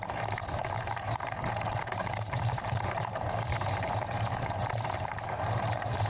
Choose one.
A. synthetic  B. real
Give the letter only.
A